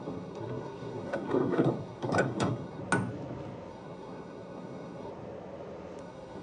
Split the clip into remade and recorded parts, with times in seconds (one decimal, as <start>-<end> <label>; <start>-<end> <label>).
0.0-2.8 remade; 2.8-3.7 recorded; 3.7-5.1 remade; 5.1-6.0 recorded; 6.0-6.4 remade